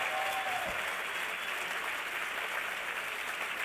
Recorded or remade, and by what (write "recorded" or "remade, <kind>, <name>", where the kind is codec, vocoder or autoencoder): recorded